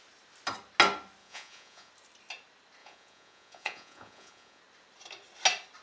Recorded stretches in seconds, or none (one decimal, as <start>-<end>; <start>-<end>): 0.0-1.2; 1.9-2.8; 4.6-5.8